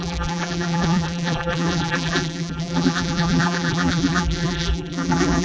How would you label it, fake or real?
fake